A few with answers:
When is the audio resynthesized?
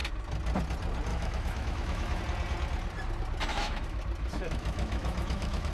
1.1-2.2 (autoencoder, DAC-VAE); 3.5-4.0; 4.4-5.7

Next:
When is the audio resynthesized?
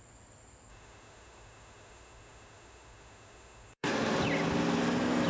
0.7-3.9 (autoencoder, DAC-VAE)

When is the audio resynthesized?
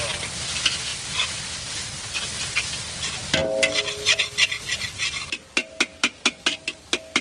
none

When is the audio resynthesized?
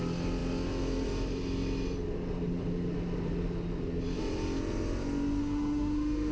5.4-6.3 (autoencoder, DAC-VAE)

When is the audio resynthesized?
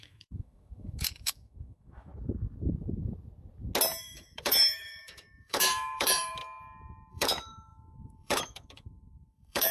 0.0-2.1 (autoencoder, DAC-VAE); 4.0-6.4; 7.1-9.7